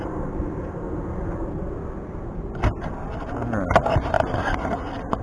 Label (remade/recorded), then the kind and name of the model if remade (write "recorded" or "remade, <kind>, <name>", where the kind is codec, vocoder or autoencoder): recorded